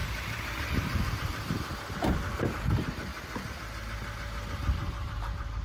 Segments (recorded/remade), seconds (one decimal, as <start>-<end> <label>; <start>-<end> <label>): 0.0-3.1 remade; 3.1-4.5 recorded; 4.5-5.6 remade